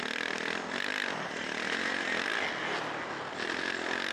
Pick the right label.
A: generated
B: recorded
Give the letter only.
B